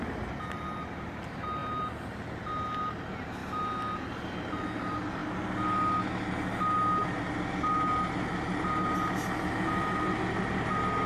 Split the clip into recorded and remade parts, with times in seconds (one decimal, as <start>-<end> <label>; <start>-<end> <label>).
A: 0.0-1.6 recorded; 1.6-2.4 remade; 2.4-11.1 recorded